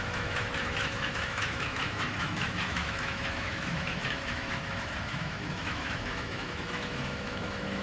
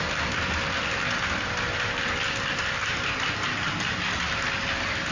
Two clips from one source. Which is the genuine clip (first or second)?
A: second